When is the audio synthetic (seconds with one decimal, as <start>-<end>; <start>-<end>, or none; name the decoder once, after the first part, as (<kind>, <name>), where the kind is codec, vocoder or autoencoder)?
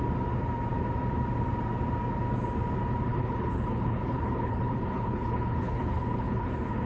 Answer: 3.1-6.9 (codec, HILCodec)